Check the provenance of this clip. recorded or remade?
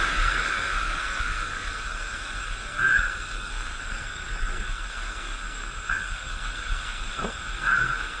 remade